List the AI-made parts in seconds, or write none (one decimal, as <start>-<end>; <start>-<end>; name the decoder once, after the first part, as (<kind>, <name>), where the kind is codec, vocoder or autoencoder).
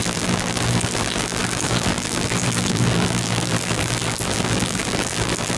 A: 0.0-5.6 (vocoder, BigVGAN v2)